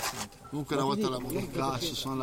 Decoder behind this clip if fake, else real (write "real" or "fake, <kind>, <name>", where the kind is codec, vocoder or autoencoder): real